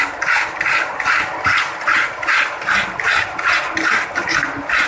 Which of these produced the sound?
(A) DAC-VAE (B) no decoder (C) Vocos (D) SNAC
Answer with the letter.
B